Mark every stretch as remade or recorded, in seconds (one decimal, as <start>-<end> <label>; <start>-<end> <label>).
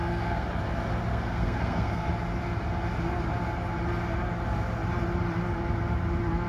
0.0-0.5 remade; 0.5-1.1 recorded; 1.1-2.1 remade; 2.1-6.5 recorded